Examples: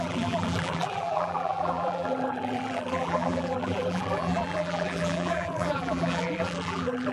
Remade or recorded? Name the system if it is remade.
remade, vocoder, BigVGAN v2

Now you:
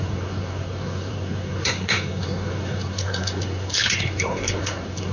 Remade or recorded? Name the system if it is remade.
remade, codec, SNAC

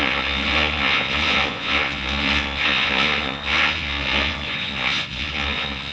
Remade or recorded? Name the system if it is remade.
remade, vocoder, Vocos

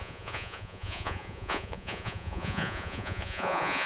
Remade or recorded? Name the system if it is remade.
remade, vocoder, Vocos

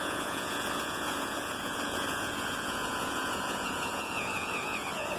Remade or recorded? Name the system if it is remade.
remade, vocoder, Vocos